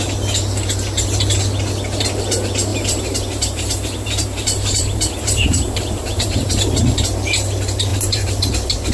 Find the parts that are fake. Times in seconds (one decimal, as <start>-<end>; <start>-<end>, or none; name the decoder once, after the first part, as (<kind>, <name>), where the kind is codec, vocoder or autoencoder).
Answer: 2.7-6.8 (vocoder, BigVGAN v2); 7.9-8.5